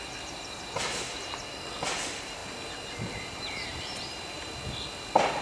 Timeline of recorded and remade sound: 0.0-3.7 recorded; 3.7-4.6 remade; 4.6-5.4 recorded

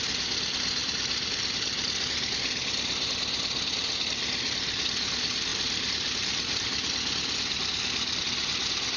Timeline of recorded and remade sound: 0.0-5.5 recorded; 5.5-8.2 remade; 8.2-9.0 recorded

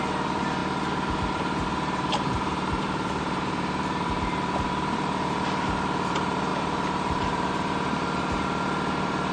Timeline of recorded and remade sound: 0.0-9.3 remade

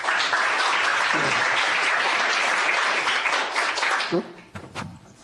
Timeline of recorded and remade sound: 0.0-0.9 recorded; 0.9-3.7 remade; 3.7-5.2 recorded